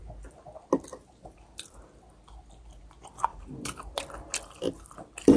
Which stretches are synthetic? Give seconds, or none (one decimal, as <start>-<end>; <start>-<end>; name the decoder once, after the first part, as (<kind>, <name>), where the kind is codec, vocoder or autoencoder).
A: 0.9-1.9 (vocoder, BigVGAN v2); 3.3-4.1